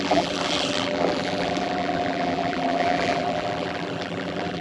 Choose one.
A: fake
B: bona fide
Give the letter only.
A